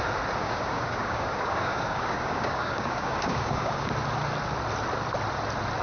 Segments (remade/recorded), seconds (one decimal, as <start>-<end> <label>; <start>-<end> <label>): 0.0-0.4 recorded; 0.4-3.9 remade; 3.9-5.8 recorded